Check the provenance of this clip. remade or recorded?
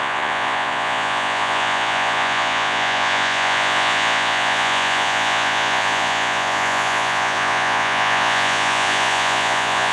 remade